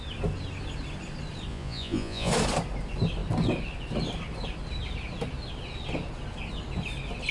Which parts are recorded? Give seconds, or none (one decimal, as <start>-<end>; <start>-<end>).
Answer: 0.0-1.5; 2.3-7.3